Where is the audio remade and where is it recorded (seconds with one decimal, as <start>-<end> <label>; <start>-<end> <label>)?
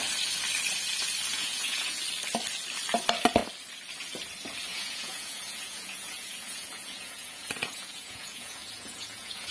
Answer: 0.0-1.3 recorded; 1.3-2.0 remade; 2.0-4.7 recorded; 4.7-9.5 remade